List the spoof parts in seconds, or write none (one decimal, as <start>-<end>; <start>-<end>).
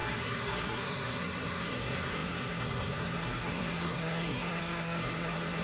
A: 0.0-5.6